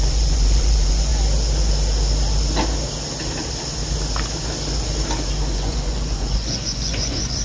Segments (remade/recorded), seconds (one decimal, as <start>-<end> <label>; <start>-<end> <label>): 0.0-1.1 remade; 1.1-5.5 recorded; 5.5-7.4 remade